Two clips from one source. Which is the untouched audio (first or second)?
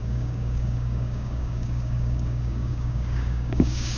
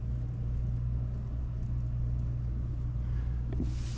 second